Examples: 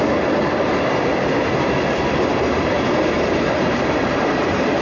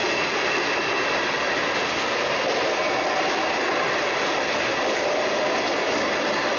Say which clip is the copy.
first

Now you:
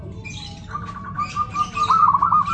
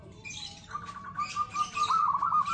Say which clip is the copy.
second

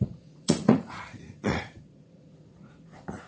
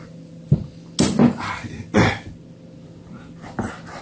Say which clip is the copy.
first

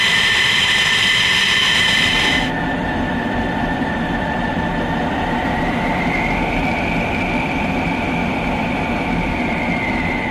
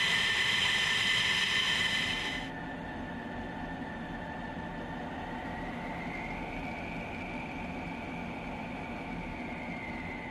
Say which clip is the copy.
first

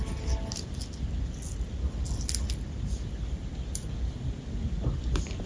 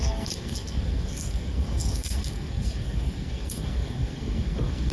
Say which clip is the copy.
second